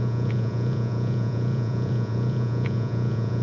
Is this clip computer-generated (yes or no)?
yes